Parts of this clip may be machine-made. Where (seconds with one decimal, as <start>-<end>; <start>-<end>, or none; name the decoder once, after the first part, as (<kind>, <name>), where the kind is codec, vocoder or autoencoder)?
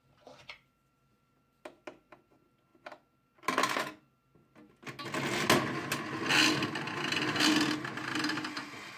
none